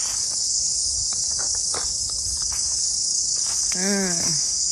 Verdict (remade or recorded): remade